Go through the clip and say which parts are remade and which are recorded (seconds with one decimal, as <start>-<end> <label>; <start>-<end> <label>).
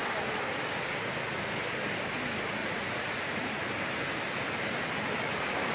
0.0-2.6 recorded; 2.6-3.6 remade; 3.6-5.7 recorded